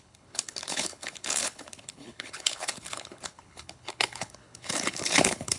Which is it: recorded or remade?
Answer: remade